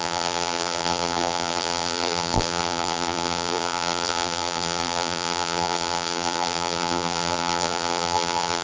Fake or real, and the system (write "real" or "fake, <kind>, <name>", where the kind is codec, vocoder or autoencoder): fake, vocoder, BigVGAN v2